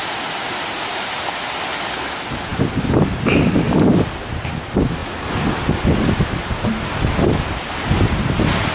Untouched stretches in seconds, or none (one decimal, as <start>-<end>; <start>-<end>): 0.0-8.7